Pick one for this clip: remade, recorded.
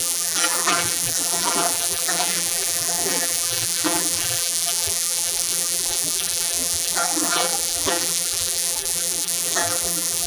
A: remade